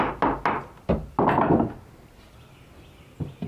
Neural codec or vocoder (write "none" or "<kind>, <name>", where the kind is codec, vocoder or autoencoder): none